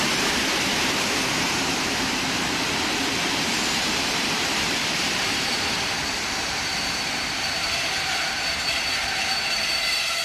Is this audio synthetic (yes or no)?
yes